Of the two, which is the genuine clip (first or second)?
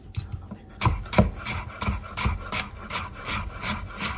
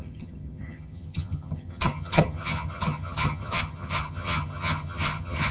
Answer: first